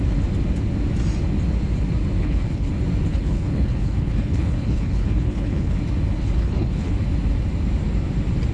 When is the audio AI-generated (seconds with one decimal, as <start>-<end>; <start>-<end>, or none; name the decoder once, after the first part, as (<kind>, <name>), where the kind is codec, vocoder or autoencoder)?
2.2-2.7 (codec, HILCodec); 3.1-5.8; 6.2-6.9

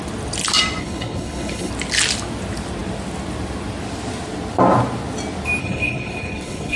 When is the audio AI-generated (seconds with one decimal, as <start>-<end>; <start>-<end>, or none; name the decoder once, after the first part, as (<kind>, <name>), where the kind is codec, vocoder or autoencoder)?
0.8-1.7 (codec, HILCodec); 5.6-6.8

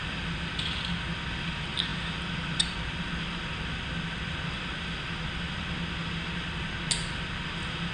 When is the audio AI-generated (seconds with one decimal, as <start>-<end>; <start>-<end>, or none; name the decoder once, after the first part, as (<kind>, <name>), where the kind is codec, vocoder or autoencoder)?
none

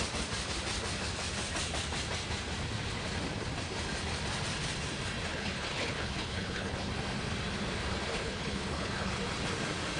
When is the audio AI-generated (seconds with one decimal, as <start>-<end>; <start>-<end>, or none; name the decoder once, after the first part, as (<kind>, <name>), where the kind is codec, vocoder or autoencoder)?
5.3-6.9 (codec, HILCodec); 8.1-9.1